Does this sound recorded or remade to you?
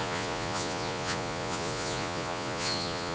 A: remade